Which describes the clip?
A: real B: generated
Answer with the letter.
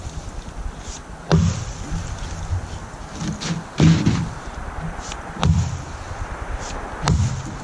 A